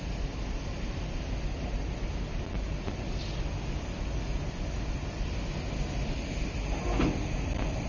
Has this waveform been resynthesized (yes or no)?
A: no